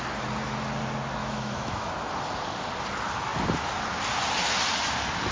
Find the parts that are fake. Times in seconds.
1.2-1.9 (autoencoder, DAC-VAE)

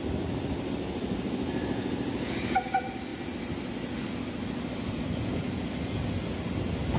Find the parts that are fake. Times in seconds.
none

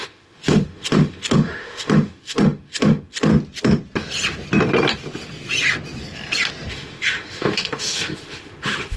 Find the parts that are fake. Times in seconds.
0.0-3.3 (autoencoder, DAC-VAE); 6.7-9.0

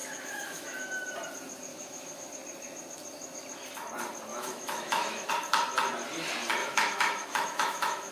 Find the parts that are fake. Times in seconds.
0.0-0.9 (autoencoder, DAC-VAE); 1.7-2.3; 4.3-5.3; 6.6-8.1

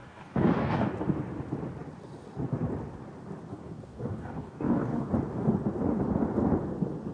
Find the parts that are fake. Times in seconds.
0.0-0.9 (codec, DAC); 3.5-5.1